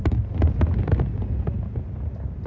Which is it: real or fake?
real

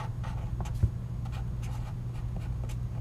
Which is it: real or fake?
real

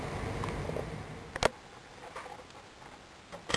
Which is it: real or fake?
real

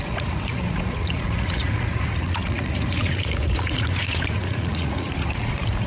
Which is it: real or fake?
fake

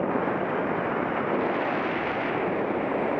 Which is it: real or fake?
real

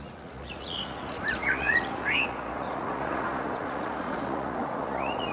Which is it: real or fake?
fake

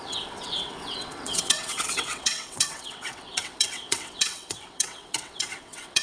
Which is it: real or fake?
fake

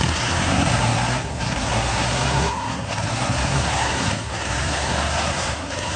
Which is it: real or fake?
fake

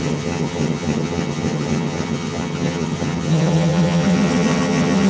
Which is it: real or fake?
fake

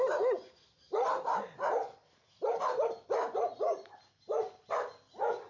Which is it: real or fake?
real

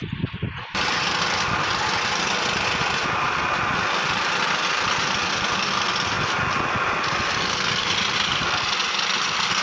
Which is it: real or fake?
real